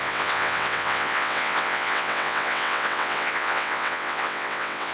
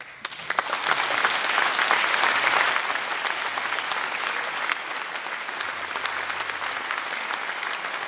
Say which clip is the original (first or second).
second